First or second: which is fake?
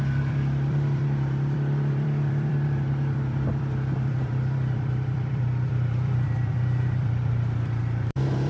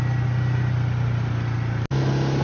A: first